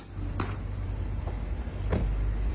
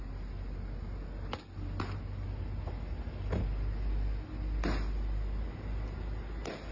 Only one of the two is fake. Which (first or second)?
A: first